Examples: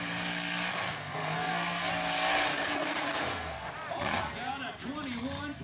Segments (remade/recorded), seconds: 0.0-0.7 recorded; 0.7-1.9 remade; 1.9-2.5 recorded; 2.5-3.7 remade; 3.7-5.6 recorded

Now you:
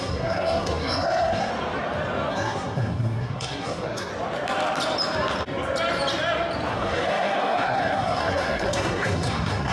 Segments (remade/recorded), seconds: 0.0-1.5 remade; 1.5-2.3 recorded; 2.3-4.1 remade; 4.1-6.7 recorded; 6.7-9.7 remade